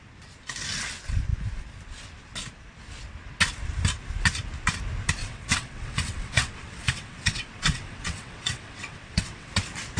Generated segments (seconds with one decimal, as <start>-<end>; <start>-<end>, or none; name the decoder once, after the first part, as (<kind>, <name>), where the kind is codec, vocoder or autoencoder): 5.2-9.5 (vocoder, WaveNeXt)